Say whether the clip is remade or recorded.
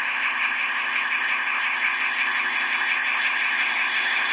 remade